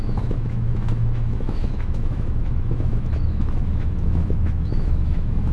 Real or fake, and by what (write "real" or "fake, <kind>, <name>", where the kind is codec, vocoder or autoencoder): fake, autoencoder, DAC-VAE